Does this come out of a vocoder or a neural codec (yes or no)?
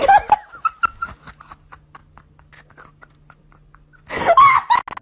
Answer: no